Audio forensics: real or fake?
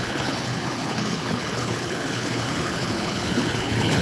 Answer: fake